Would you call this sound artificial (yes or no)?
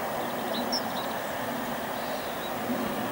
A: no